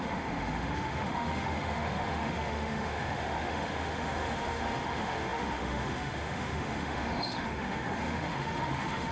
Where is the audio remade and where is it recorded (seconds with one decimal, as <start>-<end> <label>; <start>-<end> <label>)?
0.0-9.1 remade